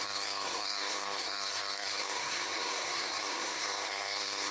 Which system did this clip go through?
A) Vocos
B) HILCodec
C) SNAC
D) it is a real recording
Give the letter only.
C